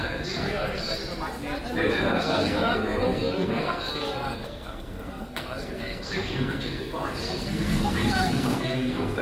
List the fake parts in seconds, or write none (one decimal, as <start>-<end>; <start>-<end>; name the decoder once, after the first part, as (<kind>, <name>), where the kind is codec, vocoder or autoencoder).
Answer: 0.0-1.0 (codec, SNAC); 1.9-9.2